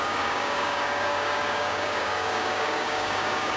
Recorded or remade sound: remade